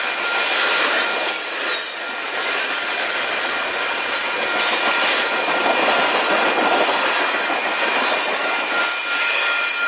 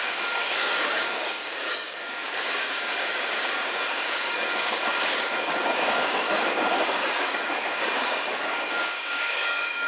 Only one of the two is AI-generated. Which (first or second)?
second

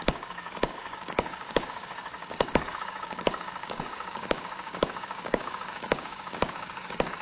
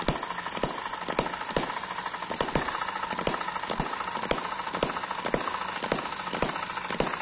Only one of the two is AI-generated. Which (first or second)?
first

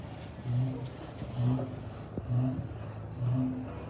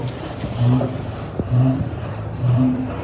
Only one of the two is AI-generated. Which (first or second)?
second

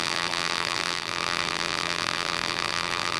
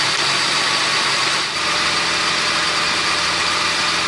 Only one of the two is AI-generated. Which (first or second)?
first